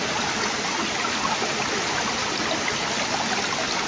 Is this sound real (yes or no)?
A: yes